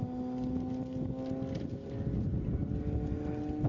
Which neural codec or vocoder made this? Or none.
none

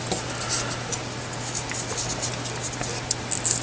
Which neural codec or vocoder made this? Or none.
none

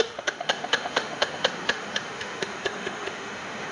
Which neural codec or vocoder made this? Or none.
autoencoder, DAC-VAE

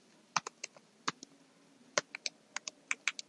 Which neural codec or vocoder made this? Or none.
none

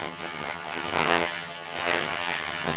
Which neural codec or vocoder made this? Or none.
vocoder, HiFi-GAN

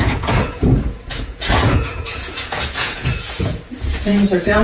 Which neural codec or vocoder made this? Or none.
vocoder, Vocos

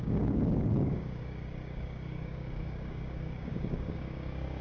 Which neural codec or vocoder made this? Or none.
codec, DAC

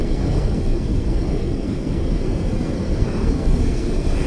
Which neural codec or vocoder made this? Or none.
codec, SNAC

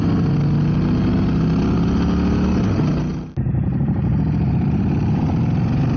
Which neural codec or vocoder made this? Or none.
none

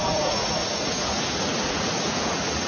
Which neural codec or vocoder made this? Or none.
vocoder, Vocos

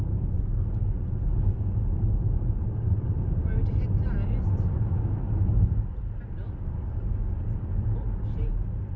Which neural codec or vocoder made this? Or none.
none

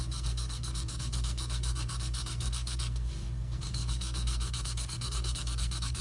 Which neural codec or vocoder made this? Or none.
codec, SNAC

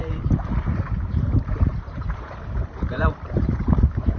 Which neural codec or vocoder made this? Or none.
vocoder, BigVGAN v2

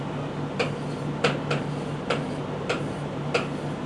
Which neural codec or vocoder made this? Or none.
none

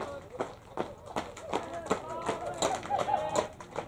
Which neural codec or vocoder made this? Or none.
none